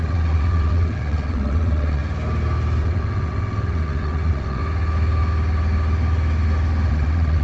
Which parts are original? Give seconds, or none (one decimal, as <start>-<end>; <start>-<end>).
2.0-2.8; 4.6-6.9